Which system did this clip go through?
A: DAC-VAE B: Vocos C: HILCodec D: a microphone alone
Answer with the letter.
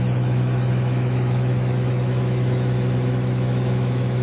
A